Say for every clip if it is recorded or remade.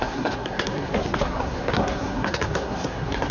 remade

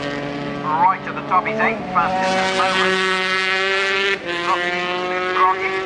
recorded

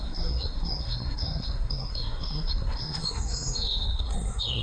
remade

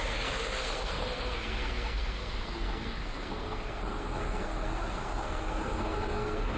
remade